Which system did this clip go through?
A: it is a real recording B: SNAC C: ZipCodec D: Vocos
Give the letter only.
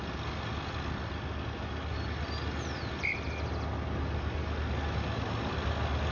A